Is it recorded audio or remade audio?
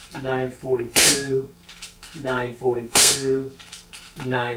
remade